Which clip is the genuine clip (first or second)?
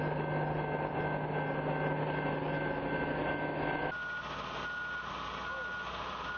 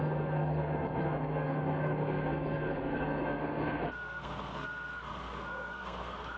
first